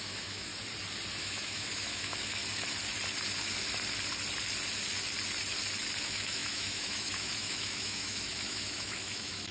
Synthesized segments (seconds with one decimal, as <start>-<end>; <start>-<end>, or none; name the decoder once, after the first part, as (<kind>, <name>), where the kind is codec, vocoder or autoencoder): 0.0-0.5 (autoencoder, DAC-VAE); 1.2-2.4; 6.0-9.5